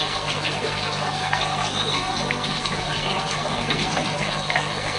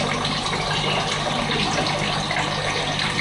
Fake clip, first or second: first